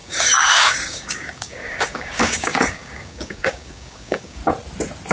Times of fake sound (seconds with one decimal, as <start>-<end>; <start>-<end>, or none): 0.0-4.4